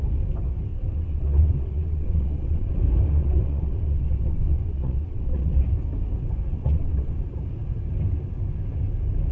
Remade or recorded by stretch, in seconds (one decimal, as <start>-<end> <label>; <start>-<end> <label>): 0.0-0.7 recorded; 0.7-2.7 remade; 2.7-3.1 recorded; 3.1-5.5 remade; 5.5-6.6 recorded; 6.6-7.1 remade; 7.1-9.3 recorded